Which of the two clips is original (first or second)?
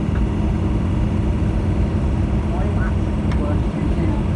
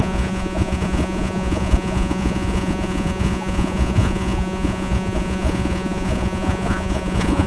first